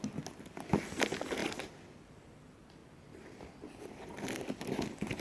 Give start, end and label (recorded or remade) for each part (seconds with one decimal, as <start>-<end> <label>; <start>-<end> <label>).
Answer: 0.0-5.2 recorded